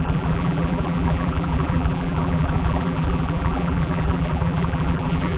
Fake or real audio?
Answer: fake